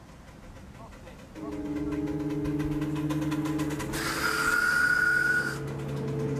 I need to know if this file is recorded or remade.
recorded